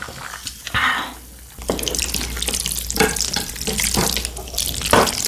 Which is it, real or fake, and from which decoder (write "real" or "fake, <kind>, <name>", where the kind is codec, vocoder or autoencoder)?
real